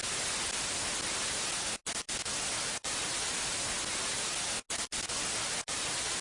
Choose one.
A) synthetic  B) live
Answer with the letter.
B